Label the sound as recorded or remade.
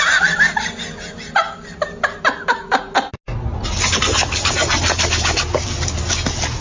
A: recorded